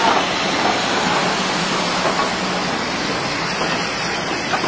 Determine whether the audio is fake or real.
real